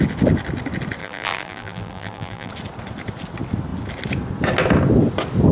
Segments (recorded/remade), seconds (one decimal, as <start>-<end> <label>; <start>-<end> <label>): 0.0-1.0 recorded; 1.0-2.5 remade; 2.5-5.5 recorded